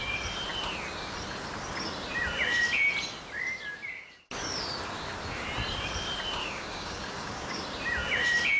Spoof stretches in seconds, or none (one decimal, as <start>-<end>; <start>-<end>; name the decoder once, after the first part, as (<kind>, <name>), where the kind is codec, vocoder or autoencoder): 6.4-7.6 (codec, DAC)